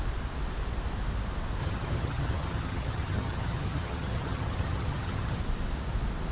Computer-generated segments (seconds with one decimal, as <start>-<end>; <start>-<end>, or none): 1.6-5.4

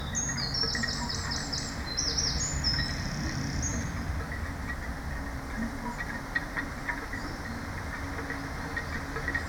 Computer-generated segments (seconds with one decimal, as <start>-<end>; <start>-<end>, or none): none

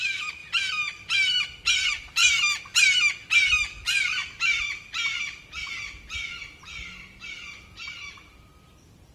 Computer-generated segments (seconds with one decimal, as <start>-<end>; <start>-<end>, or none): 0.0-0.4; 1.7-2.2; 7.2-9.1

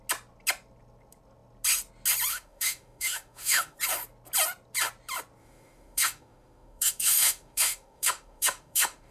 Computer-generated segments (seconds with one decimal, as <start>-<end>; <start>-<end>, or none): 2.3-3.8; 5.4-9.1

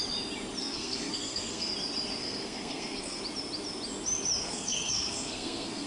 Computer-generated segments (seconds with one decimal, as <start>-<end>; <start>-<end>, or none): 0.6-1.7; 2.2-3.2; 4.4-5.9

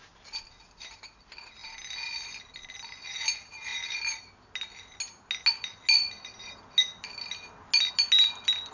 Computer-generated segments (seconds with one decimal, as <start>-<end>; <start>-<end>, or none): none